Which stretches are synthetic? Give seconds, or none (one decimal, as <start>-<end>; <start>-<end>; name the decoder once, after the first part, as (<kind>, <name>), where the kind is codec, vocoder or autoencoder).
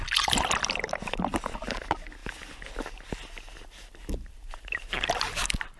none